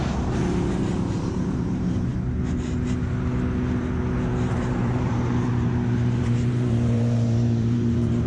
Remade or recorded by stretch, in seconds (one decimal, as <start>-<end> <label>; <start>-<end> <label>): 0.0-0.7 recorded; 0.7-2.1 remade; 2.1-4.5 recorded; 4.5-5.7 remade; 5.7-6.2 recorded; 6.2-8.3 remade